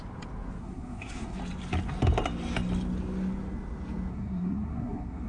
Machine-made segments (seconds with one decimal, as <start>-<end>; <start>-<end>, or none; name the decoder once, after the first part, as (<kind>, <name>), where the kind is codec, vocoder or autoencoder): 0.6-1.4 (codec, SNAC); 4.1-5.3